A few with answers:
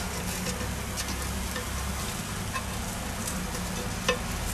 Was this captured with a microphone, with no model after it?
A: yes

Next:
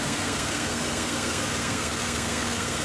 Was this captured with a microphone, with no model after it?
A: no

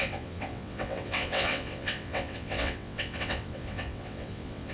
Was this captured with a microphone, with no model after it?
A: no